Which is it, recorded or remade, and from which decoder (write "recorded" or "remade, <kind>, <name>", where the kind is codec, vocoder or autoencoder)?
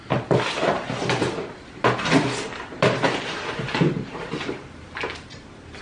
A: remade, vocoder, BigVGAN v2